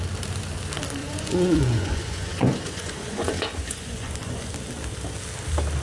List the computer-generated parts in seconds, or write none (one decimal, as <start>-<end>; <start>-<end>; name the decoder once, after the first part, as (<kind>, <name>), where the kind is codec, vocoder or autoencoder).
1.0-4.5 (vocoder, Vocos)